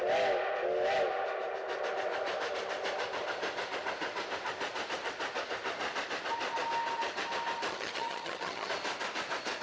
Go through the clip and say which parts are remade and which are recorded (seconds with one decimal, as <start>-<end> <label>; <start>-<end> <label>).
0.0-7.7 recorded; 7.7-8.7 remade; 8.7-9.6 recorded